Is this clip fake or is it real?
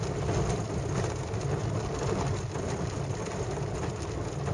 real